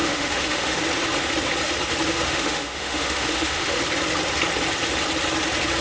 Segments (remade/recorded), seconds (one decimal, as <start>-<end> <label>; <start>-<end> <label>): 0.0-0.8 remade; 0.8-2.1 recorded; 2.1-3.8 remade; 3.8-5.8 recorded